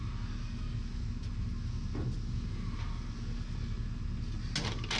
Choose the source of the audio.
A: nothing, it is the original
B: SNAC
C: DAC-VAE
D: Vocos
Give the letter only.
A